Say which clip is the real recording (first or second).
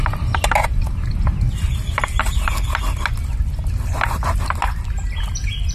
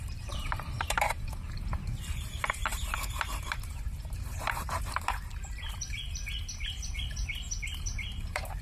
first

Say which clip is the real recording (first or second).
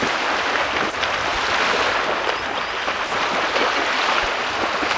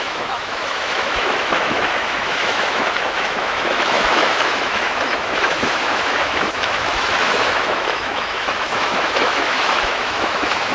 first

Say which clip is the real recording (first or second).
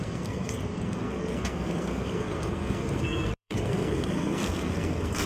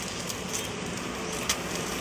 second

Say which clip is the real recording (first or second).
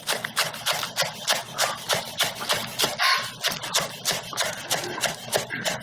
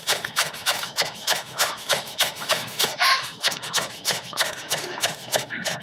first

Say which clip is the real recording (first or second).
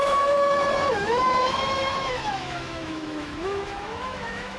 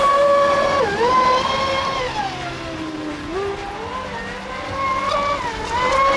second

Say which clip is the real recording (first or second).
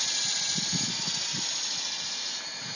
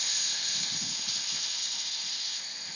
first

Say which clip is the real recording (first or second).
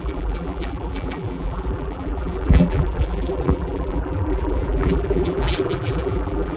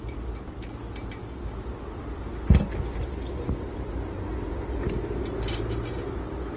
second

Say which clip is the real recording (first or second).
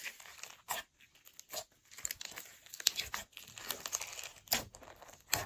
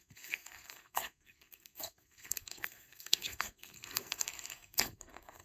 first